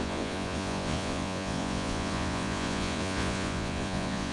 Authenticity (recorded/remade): remade